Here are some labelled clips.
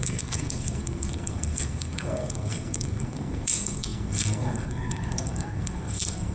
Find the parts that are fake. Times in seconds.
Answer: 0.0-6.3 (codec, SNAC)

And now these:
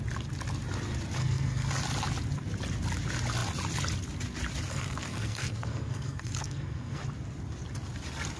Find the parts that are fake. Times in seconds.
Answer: 1.2-1.7 (codec, SNAC); 4.7-7.0

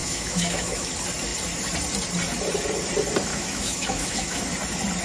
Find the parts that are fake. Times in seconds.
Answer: 0.0-0.9 (autoencoder, DAC-VAE); 3.3-4.4

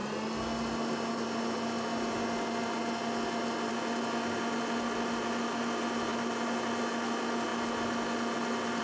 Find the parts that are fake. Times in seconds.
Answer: none

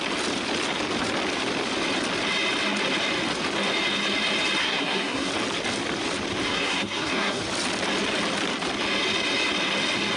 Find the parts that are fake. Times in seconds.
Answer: 4.6-5.3 (codec, SNAC); 6.5-7.4

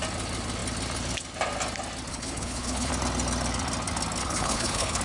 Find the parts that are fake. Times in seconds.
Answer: 2.1-2.9 (codec, HILCodec); 4.2-5.0